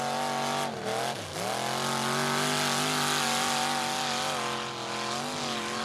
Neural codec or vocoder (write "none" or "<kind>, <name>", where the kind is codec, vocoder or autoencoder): none